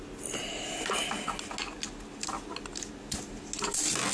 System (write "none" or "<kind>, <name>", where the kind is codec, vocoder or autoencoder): none